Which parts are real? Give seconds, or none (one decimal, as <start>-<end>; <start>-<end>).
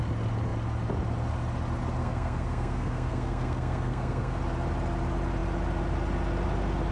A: 0.0-2.0; 4.4-6.9